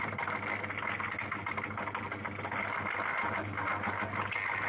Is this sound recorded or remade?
recorded